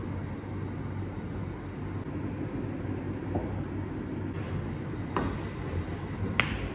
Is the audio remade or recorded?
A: recorded